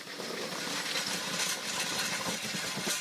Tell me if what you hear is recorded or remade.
recorded